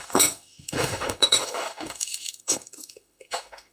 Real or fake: fake